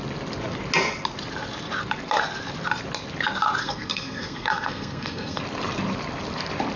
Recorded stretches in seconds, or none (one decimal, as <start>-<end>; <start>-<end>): 0.0-3.6; 5.4-6.8